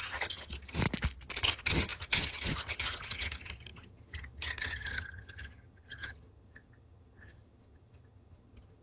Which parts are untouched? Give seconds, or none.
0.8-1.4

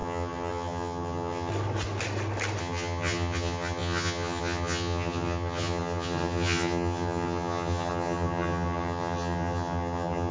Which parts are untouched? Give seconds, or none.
1.5-2.6

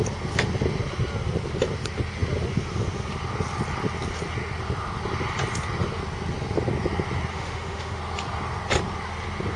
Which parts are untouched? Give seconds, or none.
0.0-7.3; 8.0-9.6

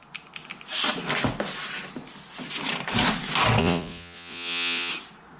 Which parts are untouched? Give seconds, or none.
0.0-3.6; 4.9-5.4

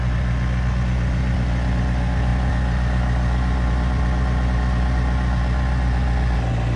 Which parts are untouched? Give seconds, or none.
0.0-6.8

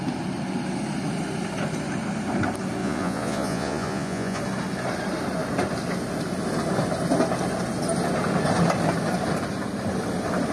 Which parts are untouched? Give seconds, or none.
0.0-2.8; 4.4-10.5